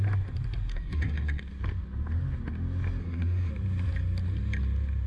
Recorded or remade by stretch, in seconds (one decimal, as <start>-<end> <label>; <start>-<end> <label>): 0.0-0.7 recorded; 0.7-1.4 remade; 1.4-3.0 recorded; 3.0-3.5 remade; 3.5-5.1 recorded